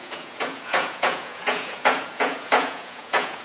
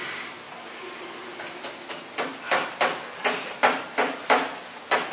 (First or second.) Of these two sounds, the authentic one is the second